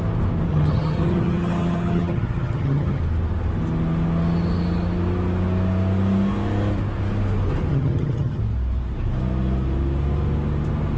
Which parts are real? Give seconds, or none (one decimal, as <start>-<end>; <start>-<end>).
0.0-0.5; 3.0-7.7; 8.4-11.0

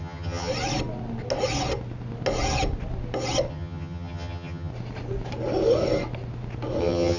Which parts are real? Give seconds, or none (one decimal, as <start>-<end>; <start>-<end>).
0.5-3.5; 4.7-6.8

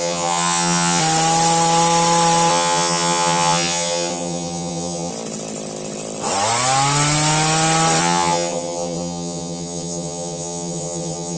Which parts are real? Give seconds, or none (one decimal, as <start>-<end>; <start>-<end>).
1.0-2.5; 5.1-8.0

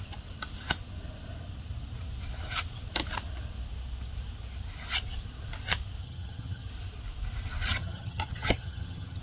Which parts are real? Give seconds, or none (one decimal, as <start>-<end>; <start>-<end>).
0.0-6.0; 6.7-7.8